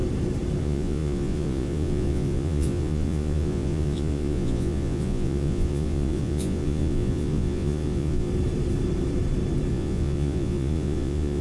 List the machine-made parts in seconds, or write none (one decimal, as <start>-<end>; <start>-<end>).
0.6-8.3; 9.7-11.4